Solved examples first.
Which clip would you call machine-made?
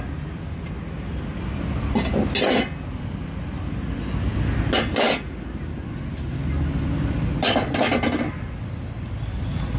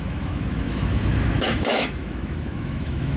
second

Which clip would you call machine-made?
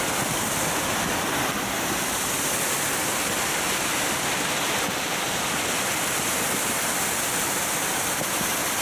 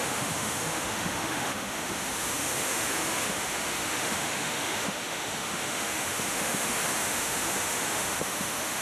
second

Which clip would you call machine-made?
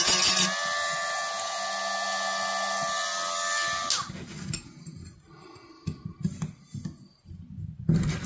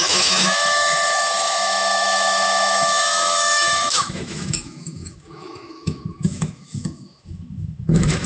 second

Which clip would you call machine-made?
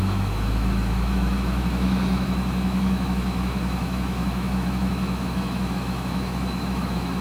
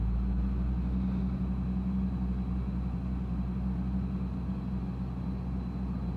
first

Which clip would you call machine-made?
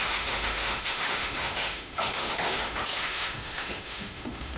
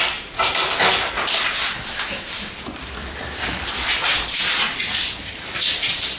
first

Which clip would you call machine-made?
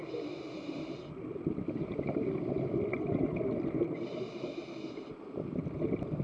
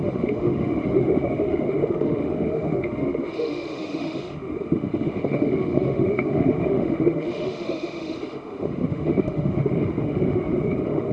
second